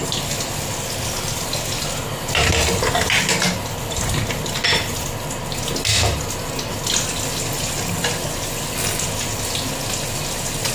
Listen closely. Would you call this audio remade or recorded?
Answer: recorded